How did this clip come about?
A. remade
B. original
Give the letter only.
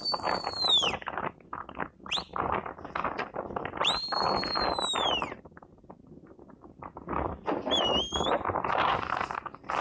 B